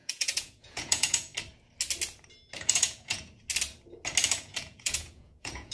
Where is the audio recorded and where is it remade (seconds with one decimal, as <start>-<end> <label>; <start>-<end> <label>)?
0.0-1.3 remade; 1.3-2.7 recorded; 2.7-3.3 remade; 3.3-4.4 recorded; 4.4-5.7 remade